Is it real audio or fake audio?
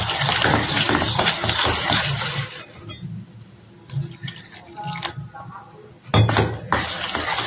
real